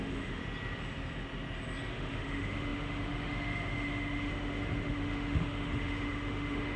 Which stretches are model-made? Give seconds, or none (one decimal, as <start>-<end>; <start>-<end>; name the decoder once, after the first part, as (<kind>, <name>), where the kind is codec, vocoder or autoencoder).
0.0-0.4 (autoencoder, DAC-VAE); 1.9-6.8